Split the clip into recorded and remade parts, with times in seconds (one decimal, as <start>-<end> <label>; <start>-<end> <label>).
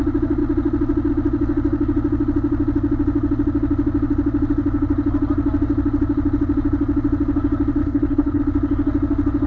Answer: 0.0-7.8 recorded; 7.8-8.4 remade; 8.4-9.5 recorded